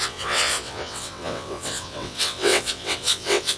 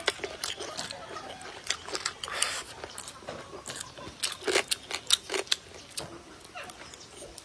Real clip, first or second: second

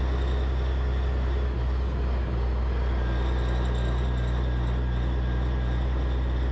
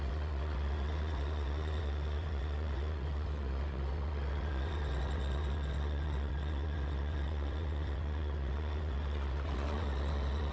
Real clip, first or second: first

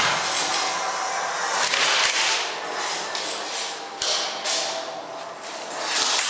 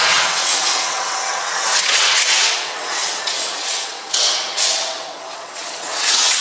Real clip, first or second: first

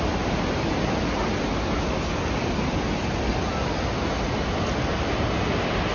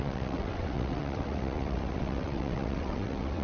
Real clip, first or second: first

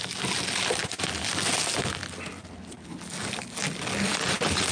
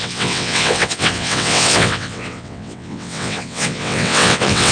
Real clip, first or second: first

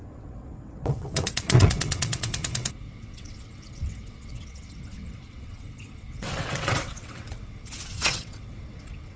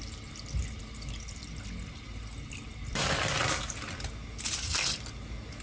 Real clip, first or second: second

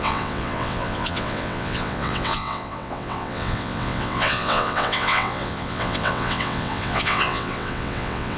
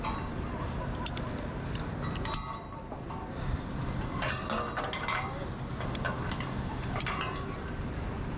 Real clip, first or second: second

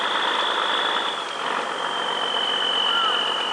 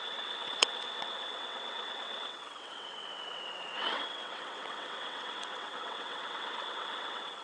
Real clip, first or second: first